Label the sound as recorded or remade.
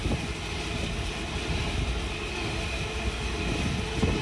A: recorded